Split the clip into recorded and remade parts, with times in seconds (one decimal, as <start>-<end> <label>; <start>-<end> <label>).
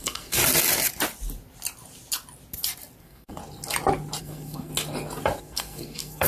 0.0-0.4 remade; 0.4-3.0 recorded; 3.0-3.4 remade; 3.4-4.2 recorded; 4.2-4.7 remade; 4.7-5.4 recorded; 5.4-6.3 remade